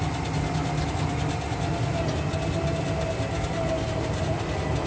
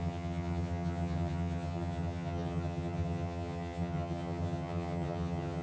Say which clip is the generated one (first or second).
second